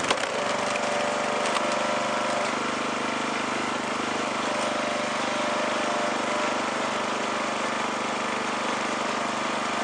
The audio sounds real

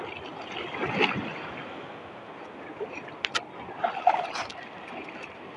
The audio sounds real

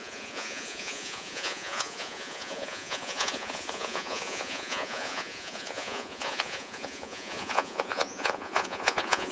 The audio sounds fake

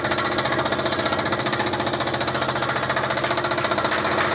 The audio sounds real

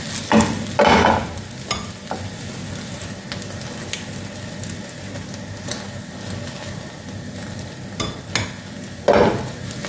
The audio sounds real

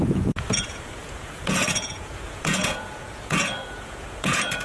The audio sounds fake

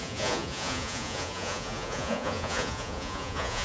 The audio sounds fake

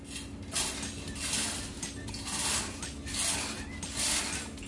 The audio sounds real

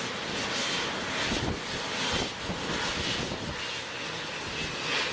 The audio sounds real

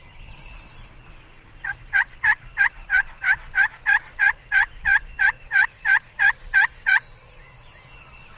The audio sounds fake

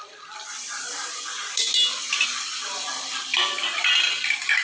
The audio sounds real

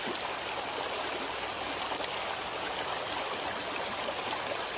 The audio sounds real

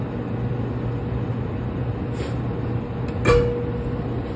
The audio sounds real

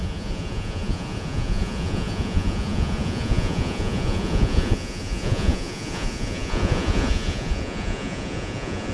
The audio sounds fake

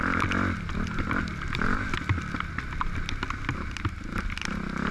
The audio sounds real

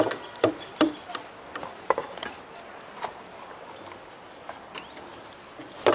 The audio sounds real